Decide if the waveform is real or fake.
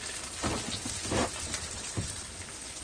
real